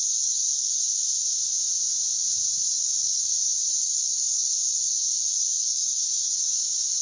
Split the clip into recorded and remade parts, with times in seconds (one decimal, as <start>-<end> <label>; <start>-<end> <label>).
0.0-1.0 remade; 1.0-2.5 recorded; 2.5-7.0 remade

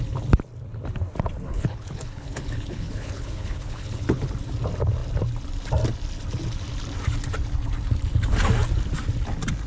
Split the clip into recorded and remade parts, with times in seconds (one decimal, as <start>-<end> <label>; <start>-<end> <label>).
0.0-1.5 recorded; 1.5-4.3 remade; 4.3-9.7 recorded